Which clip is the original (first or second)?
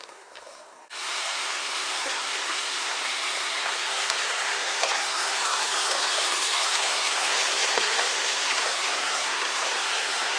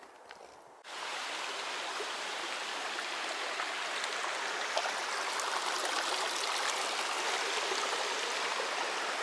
second